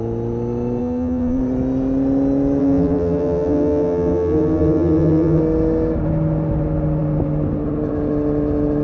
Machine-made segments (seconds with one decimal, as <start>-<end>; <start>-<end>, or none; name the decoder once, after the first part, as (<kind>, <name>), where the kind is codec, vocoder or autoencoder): 0.8-1.4 (vocoder, BigVGAN v2); 2.6-5.4